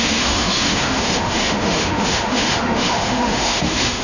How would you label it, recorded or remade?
remade